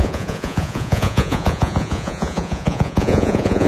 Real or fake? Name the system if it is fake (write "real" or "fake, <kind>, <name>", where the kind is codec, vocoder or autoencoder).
fake, vocoder, Vocos